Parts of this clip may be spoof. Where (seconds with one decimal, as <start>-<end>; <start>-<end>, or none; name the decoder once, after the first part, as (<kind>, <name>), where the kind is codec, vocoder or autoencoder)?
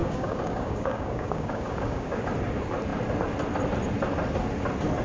0.0-2.2 (codec, DAC)